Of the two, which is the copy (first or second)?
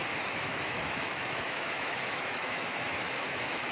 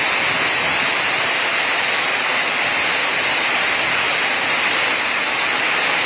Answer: first